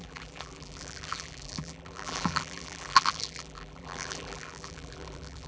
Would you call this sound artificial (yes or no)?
yes